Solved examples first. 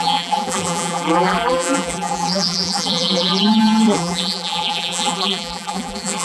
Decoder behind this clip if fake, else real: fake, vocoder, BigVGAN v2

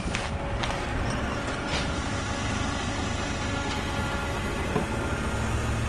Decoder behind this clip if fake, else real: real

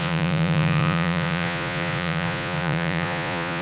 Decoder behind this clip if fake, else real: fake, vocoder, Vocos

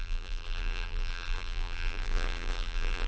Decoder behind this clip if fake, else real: fake, vocoder, BigVGAN v2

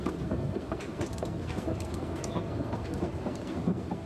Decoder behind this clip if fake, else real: fake, codec, SNAC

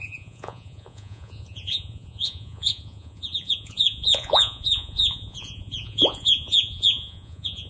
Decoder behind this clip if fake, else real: fake, vocoder, Vocos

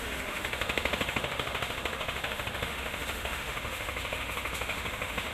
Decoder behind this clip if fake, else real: fake, autoencoder, DAC-VAE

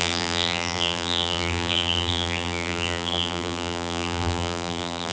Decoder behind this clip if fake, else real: fake, vocoder, BigVGAN v2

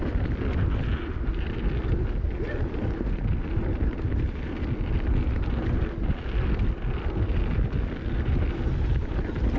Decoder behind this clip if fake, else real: real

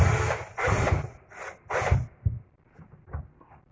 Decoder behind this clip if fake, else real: fake, vocoder, BigVGAN v2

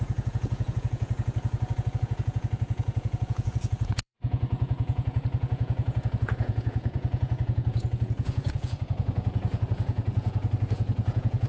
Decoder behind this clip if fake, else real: fake, vocoder, Vocos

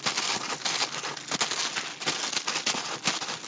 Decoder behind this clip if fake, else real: real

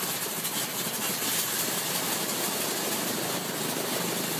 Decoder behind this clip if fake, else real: real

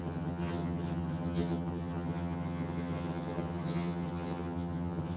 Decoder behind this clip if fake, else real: fake, vocoder, HiFi-GAN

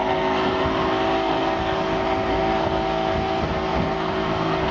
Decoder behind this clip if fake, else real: fake, codec, SNAC